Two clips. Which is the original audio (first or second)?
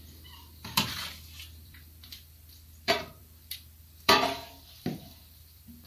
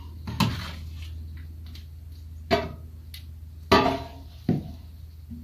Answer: second